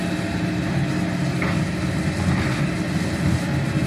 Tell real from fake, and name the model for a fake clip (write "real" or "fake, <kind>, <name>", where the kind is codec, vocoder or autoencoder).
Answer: real